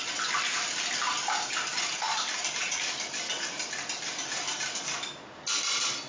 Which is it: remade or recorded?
recorded